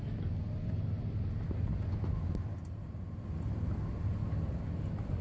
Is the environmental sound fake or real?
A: real